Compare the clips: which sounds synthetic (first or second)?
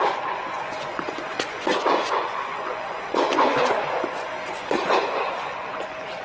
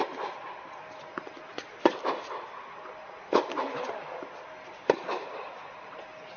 first